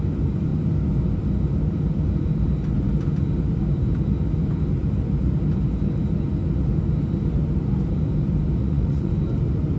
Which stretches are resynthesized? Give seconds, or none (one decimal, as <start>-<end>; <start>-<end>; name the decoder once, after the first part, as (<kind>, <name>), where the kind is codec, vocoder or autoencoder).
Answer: 8.6-9.1 (vocoder, Vocos)